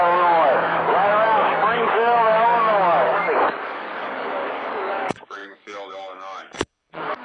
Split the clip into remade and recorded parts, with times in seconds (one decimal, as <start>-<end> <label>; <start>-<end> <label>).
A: 0.0-7.2 remade